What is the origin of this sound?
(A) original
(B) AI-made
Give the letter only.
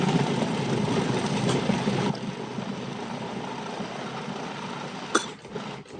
A